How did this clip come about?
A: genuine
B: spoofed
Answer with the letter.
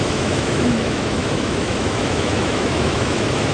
B